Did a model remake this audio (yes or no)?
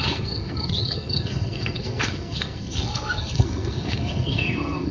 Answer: yes